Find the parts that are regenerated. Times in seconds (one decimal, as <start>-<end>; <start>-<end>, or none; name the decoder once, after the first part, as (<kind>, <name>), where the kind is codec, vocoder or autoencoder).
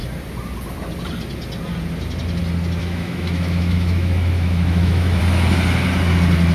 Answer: 2.8-5.2 (autoencoder, DAC-VAE)